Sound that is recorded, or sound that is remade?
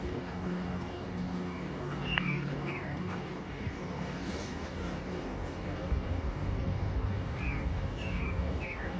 remade